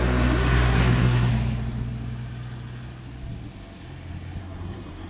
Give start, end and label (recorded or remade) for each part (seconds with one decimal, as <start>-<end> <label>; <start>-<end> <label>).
0.0-1.3 remade; 1.3-4.4 recorded; 4.4-5.1 remade